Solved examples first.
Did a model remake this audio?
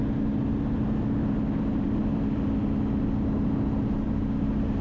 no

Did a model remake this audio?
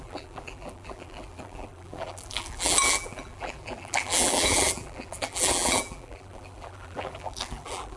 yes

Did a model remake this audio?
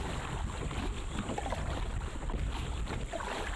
no